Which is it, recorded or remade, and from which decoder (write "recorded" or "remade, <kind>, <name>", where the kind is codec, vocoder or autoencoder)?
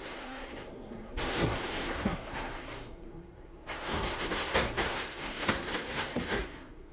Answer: remade, codec, SNAC